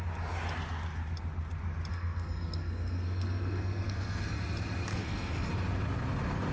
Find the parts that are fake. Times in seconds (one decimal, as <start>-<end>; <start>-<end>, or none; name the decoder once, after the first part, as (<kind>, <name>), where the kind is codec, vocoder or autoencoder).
1.9-4.3 (codec, SNAC); 4.9-5.5